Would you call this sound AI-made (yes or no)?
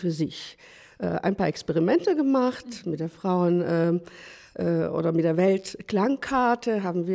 no